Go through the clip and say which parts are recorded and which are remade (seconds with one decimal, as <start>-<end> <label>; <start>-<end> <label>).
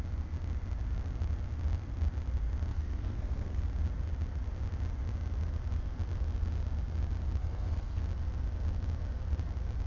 0.0-2.7 recorded; 2.7-3.6 remade; 3.6-7.4 recorded; 7.4-8.0 remade; 8.0-9.9 recorded